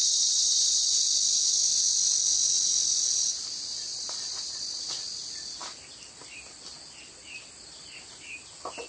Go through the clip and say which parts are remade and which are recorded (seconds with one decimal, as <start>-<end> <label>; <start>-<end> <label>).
0.0-0.9 remade; 0.9-3.9 recorded; 3.9-4.6 remade; 4.6-8.9 recorded